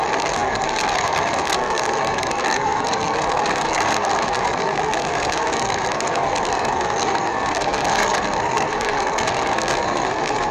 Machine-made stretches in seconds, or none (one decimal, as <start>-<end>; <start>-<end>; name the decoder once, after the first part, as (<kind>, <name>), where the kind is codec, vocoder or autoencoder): 0.0-10.5 (codec, SNAC)